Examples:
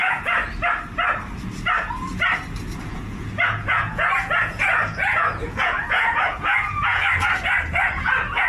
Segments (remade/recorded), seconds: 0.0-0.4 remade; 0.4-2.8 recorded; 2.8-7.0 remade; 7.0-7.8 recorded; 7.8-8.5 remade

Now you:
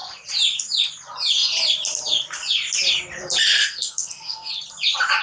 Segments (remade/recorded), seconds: 0.0-3.6 recorded; 3.6-4.5 remade; 4.5-5.2 recorded

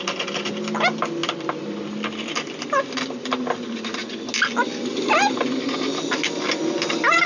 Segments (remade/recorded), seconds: 0.0-7.3 recorded

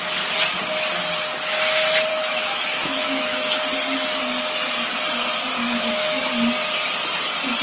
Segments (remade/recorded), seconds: 0.0-2.1 recorded; 2.1-3.6 remade; 3.6-5.6 recorded; 5.6-6.2 remade; 6.2-7.6 recorded

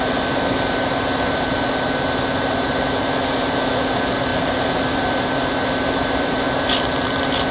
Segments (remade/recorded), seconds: 0.0-7.5 recorded

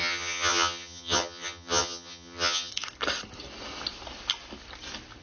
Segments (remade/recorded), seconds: 0.0-2.7 remade; 2.7-5.2 recorded

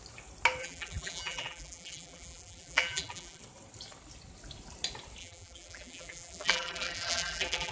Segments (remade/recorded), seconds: 0.0-0.6 recorded; 0.6-3.4 remade; 3.4-5.2 recorded; 5.2-7.7 remade